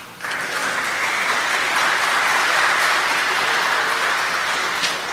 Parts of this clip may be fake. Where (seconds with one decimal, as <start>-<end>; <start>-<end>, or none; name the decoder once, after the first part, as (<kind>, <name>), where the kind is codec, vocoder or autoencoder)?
2.3-3.1 (vocoder, BigVGAN v2)